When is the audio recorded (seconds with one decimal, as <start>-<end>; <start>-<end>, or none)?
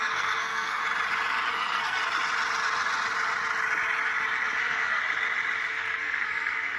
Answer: 0.8-1.5; 2.0-4.6; 5.0-5.7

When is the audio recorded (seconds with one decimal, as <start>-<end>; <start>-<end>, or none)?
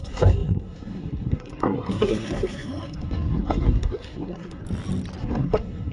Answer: 4.6-5.2